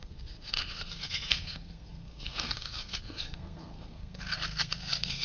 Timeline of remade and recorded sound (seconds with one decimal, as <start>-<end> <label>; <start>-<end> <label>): 0.0-5.2 remade